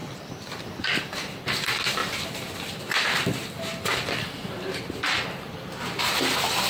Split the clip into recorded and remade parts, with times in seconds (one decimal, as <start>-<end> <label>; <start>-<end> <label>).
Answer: 0.0-1.1 remade; 1.1-6.7 recorded